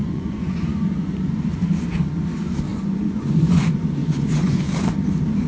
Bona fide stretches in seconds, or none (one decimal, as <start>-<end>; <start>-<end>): 1.4-2.7; 3.6-4.0; 4.6-5.5